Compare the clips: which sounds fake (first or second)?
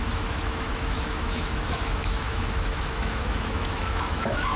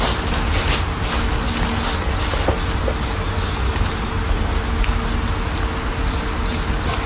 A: first